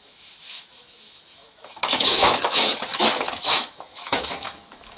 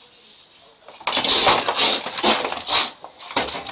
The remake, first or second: first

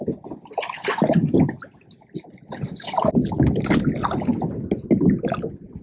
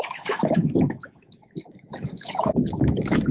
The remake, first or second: second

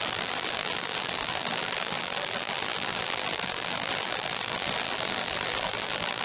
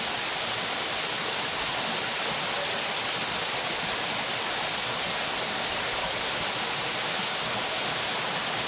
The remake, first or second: first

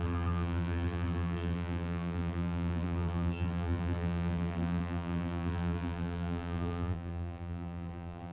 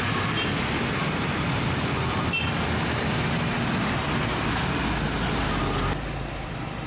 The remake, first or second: first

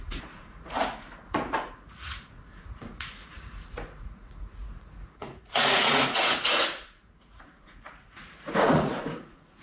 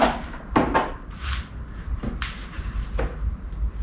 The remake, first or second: first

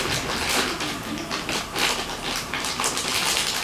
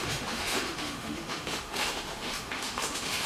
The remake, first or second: second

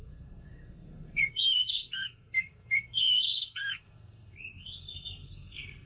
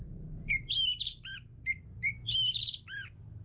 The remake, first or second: first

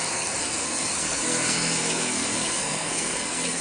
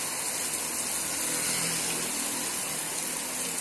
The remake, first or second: first